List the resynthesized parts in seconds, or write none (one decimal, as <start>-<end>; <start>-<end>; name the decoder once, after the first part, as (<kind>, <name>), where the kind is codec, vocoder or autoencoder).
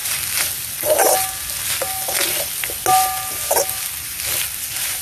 none